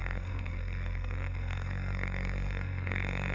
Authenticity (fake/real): fake